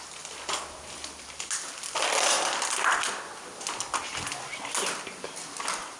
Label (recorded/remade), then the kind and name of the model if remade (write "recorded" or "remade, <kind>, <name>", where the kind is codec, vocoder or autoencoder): recorded